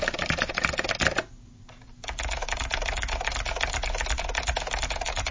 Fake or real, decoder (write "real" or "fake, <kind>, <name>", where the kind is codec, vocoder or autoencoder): fake, vocoder, BigVGAN v2